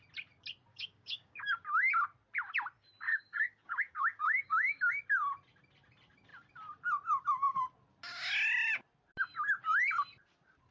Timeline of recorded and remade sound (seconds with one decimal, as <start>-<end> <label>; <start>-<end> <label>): 0.0-0.7 recorded; 0.7-1.4 remade; 1.4-3.1 recorded; 3.1-4.9 remade; 4.9-10.7 recorded